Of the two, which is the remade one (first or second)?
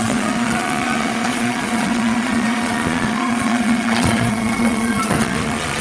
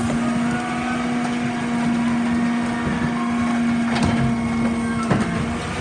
first